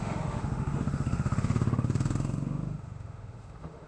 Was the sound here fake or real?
fake